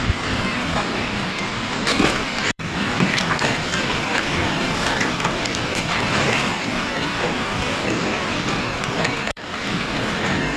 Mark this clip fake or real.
fake